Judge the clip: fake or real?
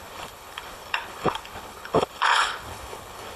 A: fake